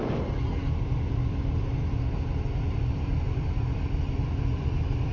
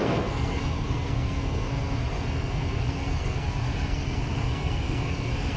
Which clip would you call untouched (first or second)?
first